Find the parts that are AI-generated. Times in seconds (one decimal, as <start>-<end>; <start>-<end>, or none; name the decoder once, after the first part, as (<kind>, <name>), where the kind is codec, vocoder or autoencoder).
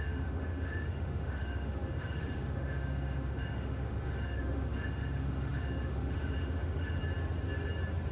0.0-7.0 (autoencoder, DAC-VAE)